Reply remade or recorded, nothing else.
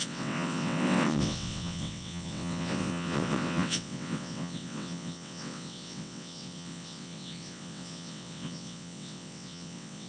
remade